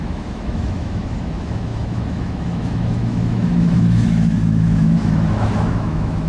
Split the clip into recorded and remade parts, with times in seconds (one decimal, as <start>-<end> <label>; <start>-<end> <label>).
0.0-6.3 remade